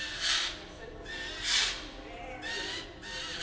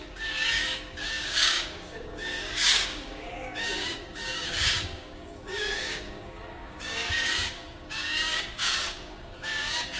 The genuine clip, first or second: first